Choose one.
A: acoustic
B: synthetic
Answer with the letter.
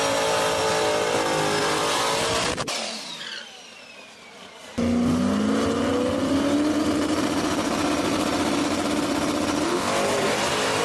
A